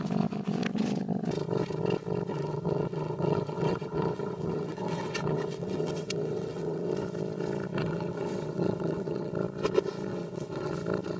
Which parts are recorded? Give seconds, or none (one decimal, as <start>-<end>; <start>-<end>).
0.0-2.3; 6.9-7.7; 9.3-10.1; 10.7-11.2